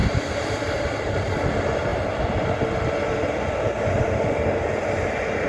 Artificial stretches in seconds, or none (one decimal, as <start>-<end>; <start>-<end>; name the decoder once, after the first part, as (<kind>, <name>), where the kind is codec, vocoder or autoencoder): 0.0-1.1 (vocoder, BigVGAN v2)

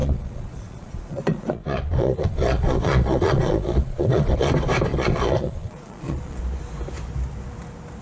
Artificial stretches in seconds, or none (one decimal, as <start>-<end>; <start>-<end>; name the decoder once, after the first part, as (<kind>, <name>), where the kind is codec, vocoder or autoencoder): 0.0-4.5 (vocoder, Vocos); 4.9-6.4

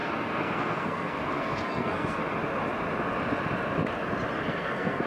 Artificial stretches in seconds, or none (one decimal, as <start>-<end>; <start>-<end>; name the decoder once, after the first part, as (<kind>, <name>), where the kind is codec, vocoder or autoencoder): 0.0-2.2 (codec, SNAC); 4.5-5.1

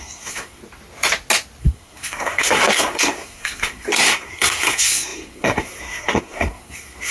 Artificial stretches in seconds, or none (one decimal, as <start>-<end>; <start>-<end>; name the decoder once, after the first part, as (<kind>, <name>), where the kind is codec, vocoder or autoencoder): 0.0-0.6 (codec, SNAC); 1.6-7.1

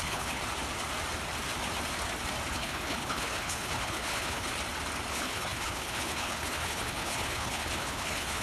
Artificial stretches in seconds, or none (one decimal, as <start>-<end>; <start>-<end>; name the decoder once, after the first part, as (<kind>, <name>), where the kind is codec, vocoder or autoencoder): 0.0-0.4 (codec, HILCodec); 2.5-4.5; 5.1-8.4